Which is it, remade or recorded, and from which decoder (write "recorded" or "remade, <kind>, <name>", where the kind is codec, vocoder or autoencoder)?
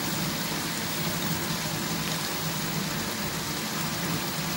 recorded